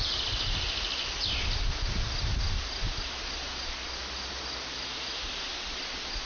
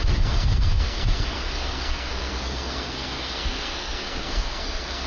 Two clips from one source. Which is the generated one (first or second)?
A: second